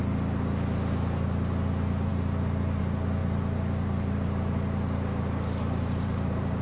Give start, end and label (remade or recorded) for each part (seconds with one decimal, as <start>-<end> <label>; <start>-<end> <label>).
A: 0.0-3.2 recorded; 3.2-6.6 remade